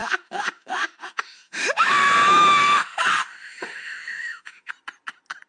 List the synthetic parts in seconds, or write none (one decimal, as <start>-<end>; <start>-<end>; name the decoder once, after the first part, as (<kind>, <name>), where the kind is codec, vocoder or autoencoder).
0.0-2.1 (autoencoder, DAC-VAE); 2.6-4.7